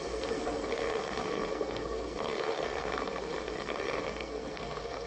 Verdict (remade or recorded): remade